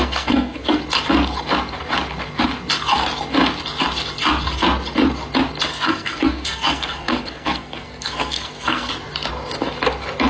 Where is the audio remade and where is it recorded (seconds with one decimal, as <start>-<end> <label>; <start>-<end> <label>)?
0.0-0.8 remade; 0.8-5.7 recorded; 5.7-8.9 remade; 8.9-10.3 recorded